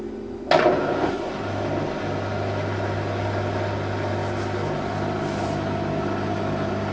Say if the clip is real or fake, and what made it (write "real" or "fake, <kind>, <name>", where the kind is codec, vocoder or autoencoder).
real